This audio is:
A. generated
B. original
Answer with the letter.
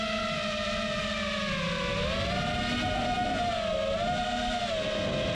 B